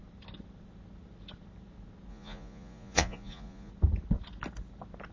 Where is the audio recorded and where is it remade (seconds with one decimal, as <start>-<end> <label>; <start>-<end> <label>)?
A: 0.0-2.1 recorded; 2.1-3.7 remade; 3.7-5.1 recorded